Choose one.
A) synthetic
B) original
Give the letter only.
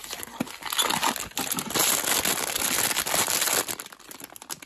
B